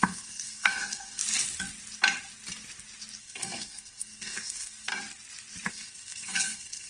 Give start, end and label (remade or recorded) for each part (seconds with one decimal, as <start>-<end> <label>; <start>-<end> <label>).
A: 0.0-1.2 remade; 1.2-3.2 recorded; 3.2-4.9 remade; 4.9-5.7 recorded; 5.7-6.9 remade